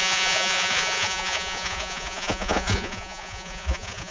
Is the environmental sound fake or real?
fake